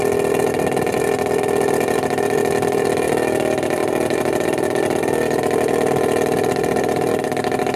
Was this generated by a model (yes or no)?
no